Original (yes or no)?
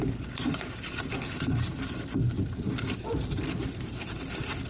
yes